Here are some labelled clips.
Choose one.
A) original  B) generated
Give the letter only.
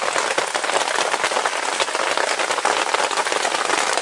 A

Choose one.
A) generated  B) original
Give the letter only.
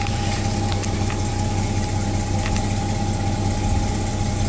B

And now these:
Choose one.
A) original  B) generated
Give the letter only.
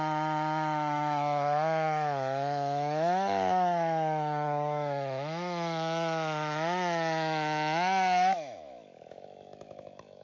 B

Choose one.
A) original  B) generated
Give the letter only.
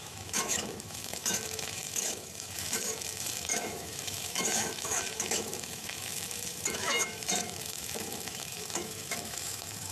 B